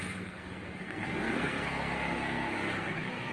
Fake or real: fake